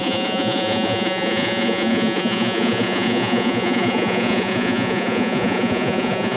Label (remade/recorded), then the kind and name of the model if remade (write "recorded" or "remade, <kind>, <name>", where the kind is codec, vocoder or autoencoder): remade, vocoder, Vocos